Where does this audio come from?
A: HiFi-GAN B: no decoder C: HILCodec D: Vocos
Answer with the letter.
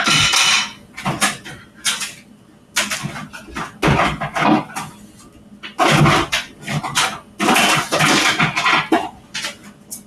B